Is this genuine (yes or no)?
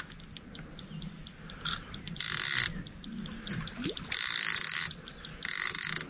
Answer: yes